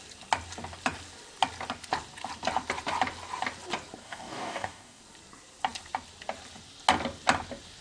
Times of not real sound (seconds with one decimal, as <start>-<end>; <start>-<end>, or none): 4.0-5.0